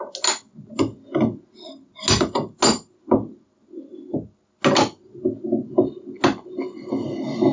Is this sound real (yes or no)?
yes